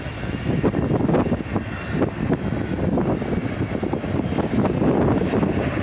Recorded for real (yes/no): yes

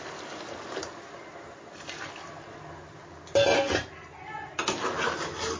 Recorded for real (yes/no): yes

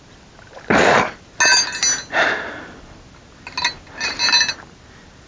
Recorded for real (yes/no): yes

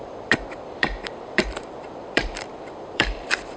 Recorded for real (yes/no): no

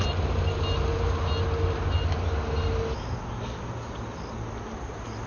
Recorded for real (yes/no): yes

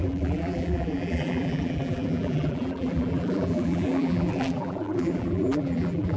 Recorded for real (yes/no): no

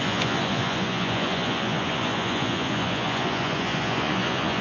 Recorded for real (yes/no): no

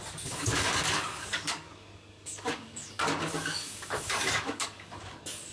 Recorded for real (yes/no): no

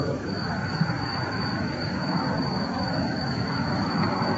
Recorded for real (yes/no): no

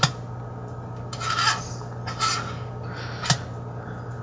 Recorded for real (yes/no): yes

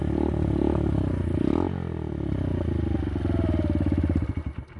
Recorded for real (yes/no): yes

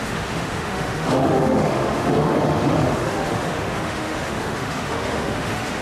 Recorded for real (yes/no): no